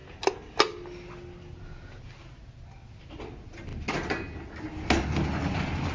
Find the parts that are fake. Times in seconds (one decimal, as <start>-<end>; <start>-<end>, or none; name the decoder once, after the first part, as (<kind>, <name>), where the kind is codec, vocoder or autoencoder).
none

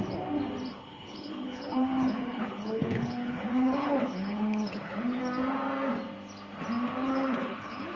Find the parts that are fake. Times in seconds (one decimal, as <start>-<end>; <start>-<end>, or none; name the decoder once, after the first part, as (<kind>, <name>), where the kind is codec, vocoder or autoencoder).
0.7-5.2 (codec, HILCodec); 7.0-8.0

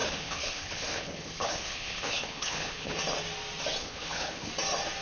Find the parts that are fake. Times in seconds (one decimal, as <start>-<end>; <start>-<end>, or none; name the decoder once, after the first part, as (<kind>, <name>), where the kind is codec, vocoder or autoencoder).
0.0-3.0 (codec, HILCodec); 3.8-4.5

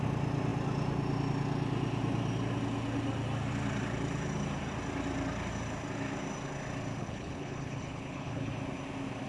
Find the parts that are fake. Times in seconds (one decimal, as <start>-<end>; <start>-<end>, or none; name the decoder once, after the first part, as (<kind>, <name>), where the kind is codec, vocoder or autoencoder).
7.0-8.5 (codec, HILCodec)

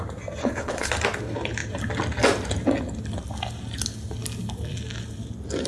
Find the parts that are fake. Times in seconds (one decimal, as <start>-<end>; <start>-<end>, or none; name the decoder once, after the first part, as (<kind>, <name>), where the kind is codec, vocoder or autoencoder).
0.4-0.9 (codec, HILCodec)

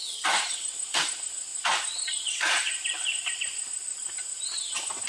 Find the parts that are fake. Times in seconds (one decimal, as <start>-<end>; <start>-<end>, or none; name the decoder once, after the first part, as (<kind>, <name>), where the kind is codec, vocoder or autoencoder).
none

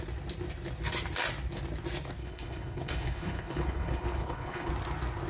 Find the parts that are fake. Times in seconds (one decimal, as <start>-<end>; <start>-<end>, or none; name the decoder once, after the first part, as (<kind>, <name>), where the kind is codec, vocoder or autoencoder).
2.2-4.7 (codec, HILCodec)